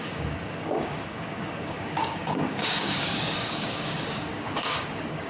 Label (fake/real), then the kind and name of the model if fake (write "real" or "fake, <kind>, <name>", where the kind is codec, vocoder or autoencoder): fake, codec, DAC